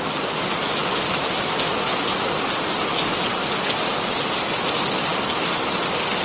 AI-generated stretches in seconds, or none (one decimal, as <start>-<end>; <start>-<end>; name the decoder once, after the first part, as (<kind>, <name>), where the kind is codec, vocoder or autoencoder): none